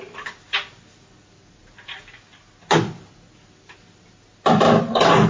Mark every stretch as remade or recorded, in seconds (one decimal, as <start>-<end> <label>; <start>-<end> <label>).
0.0-5.3 recorded